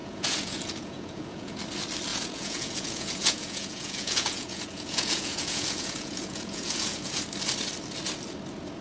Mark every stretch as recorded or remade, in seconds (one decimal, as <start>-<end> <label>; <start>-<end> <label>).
0.0-1.6 remade; 1.6-2.1 recorded; 2.1-7.1 remade; 7.1-8.8 recorded